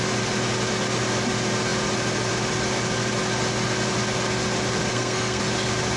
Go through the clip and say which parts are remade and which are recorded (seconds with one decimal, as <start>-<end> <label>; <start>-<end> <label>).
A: 0.0-4.9 recorded; 4.9-5.4 remade; 5.4-6.0 recorded